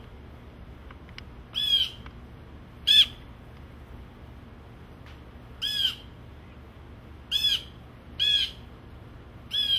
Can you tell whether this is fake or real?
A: real